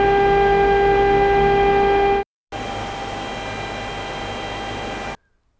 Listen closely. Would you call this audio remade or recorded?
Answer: recorded